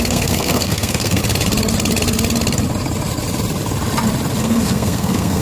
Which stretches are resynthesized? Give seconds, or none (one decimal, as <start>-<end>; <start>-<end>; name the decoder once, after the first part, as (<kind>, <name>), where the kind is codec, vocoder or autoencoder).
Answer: 0.0-1.2 (codec, SNAC); 4.4-5.4